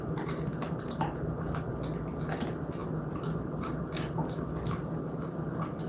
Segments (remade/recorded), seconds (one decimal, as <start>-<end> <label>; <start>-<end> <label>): 0.0-0.5 recorded; 0.5-1.6 remade; 1.6-2.8 recorded; 2.8-3.8 remade; 3.8-5.9 recorded